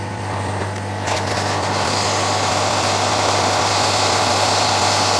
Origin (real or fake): real